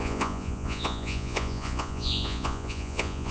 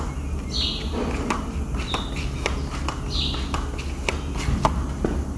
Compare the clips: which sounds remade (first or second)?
first